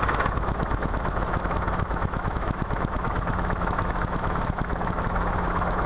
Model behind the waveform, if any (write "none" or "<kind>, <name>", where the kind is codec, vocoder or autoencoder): autoencoder, DAC-VAE